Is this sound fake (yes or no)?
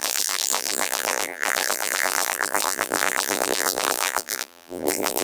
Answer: yes